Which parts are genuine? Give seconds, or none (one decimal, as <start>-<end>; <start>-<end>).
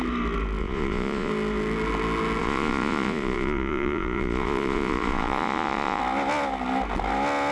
0.0-0.6; 1.3-2.4; 6.0-7.5